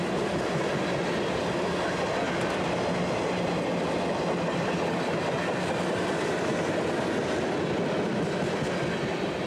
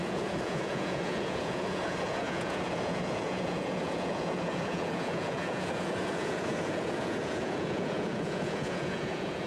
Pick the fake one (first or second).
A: second